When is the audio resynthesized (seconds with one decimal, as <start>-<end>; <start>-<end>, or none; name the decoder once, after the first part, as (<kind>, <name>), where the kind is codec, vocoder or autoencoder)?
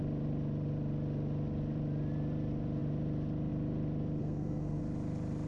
4.2-4.8 (codec, SNAC)